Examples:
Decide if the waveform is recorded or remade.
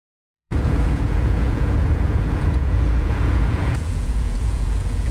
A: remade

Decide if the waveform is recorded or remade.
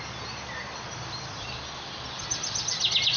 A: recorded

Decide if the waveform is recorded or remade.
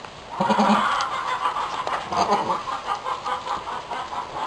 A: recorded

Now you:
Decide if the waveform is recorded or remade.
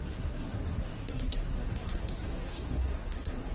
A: remade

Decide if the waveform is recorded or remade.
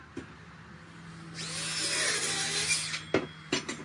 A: recorded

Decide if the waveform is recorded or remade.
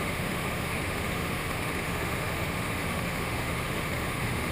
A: remade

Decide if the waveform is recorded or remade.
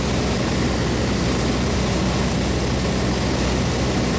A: recorded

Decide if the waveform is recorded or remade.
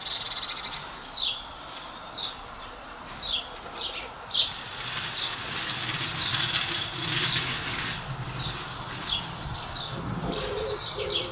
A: recorded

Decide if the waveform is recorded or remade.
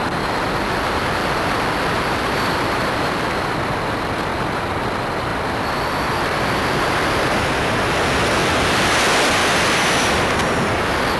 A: recorded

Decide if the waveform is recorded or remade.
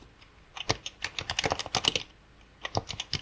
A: recorded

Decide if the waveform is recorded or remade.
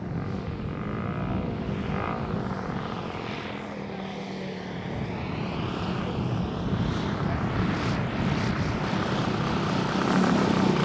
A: recorded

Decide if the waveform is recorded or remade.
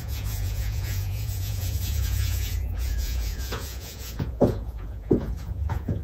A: remade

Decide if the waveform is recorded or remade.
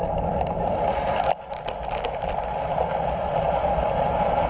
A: recorded